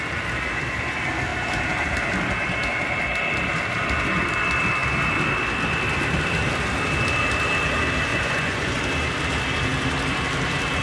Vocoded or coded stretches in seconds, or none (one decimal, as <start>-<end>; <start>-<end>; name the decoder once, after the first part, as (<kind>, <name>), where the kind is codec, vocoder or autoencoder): 8.1-8.8 (vocoder, Vocos)